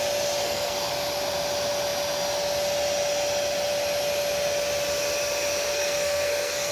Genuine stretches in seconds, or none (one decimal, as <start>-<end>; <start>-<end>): 0.0-0.4; 0.9-5.7